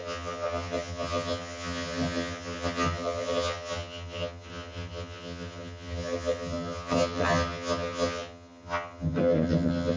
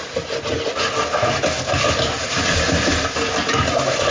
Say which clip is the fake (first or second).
first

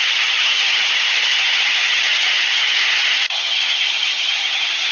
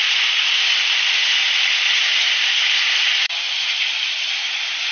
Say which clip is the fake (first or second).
first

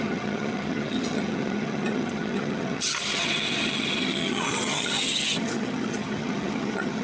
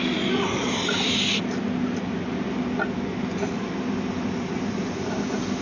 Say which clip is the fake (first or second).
first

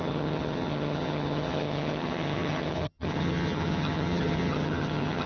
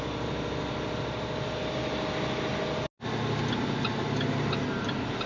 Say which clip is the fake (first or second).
first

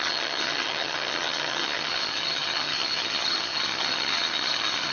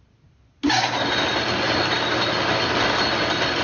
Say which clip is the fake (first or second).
first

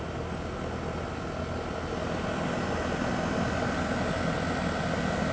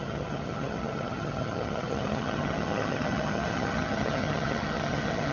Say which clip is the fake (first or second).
second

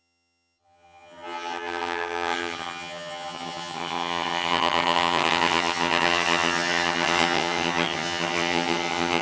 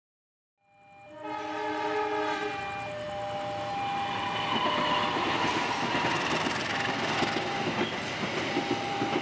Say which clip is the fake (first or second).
first